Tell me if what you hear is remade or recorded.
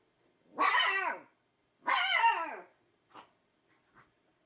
recorded